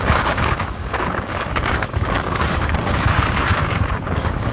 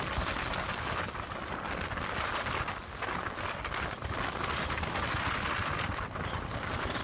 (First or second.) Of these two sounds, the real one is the second